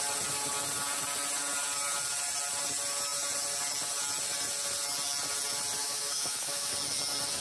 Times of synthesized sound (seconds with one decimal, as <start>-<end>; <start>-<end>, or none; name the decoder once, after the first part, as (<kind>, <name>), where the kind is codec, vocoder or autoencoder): 5.8-6.7 (autoencoder, DAC-VAE)